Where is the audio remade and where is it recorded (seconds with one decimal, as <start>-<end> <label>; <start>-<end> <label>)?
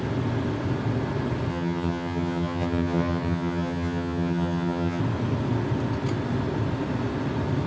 0.0-1.5 recorded; 1.5-5.0 remade; 5.0-7.7 recorded